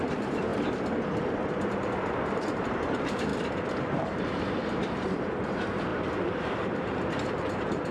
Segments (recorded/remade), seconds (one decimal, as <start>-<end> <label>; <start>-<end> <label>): 0.0-0.5 remade; 0.5-1.3 recorded; 1.3-3.3 remade; 3.3-3.8 recorded; 3.8-7.9 remade